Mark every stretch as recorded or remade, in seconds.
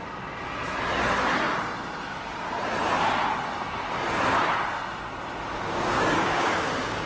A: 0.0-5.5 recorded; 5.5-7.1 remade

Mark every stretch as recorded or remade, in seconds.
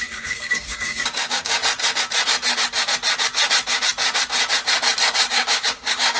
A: 0.0-1.6 remade; 1.6-5.3 recorded; 5.3-6.2 remade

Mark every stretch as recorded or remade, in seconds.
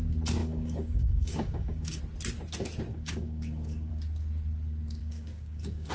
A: 0.0-0.4 recorded; 0.4-2.0 remade; 2.0-2.9 recorded; 2.9-3.9 remade; 3.9-5.0 recorded; 5.0-5.9 remade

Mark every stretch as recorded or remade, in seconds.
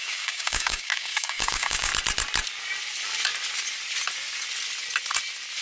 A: 0.0-1.9 remade; 1.9-5.6 recorded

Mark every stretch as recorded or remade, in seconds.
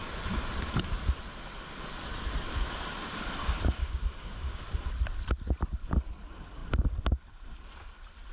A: 0.0-3.4 recorded; 3.4-4.7 remade; 4.7-8.3 recorded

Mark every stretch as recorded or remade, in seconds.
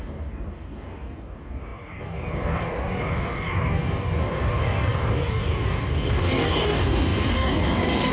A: 0.0-8.1 remade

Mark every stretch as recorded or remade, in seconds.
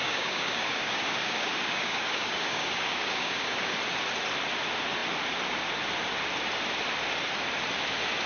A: 0.0-3.7 remade; 3.7-8.3 recorded